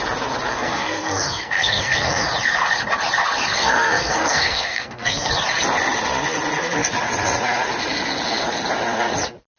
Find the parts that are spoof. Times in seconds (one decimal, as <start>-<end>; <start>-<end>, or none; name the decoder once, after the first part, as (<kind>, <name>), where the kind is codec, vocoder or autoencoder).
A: 0.5-2.3 (codec, SNAC); 3.6-5.3